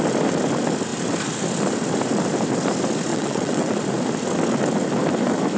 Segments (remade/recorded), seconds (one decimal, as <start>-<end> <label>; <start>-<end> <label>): 0.0-3.1 recorded; 3.1-3.7 remade; 3.7-5.6 recorded